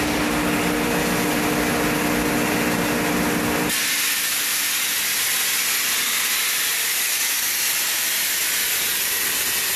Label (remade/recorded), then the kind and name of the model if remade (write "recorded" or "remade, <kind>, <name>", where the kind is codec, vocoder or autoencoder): recorded